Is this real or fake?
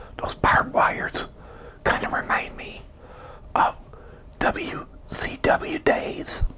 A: real